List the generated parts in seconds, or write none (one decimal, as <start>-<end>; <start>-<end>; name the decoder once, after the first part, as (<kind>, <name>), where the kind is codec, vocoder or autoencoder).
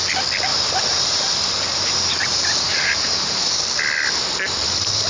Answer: 0.5-3.6 (vocoder, BigVGAN v2)